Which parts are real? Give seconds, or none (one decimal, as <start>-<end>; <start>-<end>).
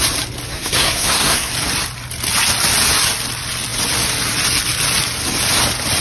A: 0.0-0.5; 1.5-6.0